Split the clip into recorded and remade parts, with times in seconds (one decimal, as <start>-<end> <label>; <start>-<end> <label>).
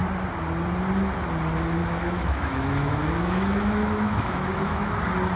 0.0-1.8 recorded; 1.8-5.0 remade; 5.0-5.4 recorded